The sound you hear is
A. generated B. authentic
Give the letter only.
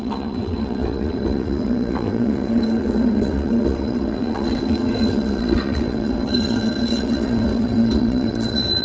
A